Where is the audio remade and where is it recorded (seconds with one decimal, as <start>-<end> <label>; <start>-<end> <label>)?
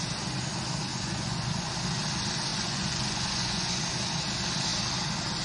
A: 0.0-0.9 recorded; 0.9-1.7 remade; 1.7-2.5 recorded; 2.5-3.8 remade; 3.8-5.4 recorded